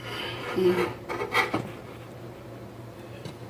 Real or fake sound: real